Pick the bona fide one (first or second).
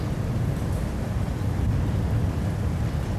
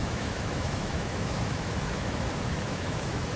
first